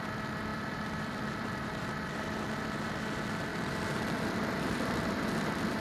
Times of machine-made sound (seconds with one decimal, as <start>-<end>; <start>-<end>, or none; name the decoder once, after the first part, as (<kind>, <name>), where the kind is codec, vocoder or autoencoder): 0.5-2.2 (vocoder, BigVGAN v2); 3.5-5.8